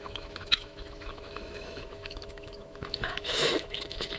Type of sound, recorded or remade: remade